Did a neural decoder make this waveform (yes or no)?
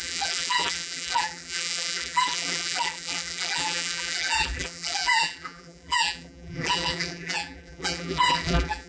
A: yes